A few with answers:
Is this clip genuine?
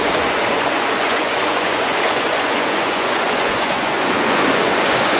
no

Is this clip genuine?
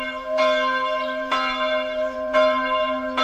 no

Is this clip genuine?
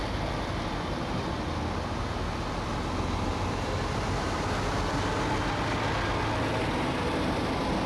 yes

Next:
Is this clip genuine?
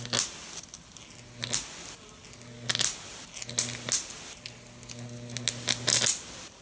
yes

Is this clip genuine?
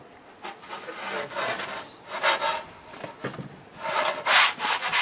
yes